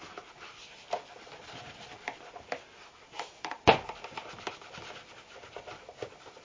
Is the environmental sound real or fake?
real